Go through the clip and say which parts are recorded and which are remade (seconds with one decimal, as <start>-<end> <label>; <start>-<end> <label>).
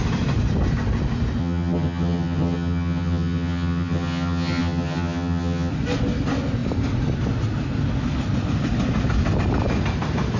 0.0-1.4 recorded; 1.4-5.7 remade; 5.7-10.4 recorded